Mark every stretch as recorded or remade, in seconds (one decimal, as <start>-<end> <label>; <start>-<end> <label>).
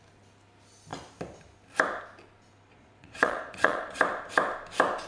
0.0-2.7 recorded; 2.7-4.0 remade; 4.0-5.1 recorded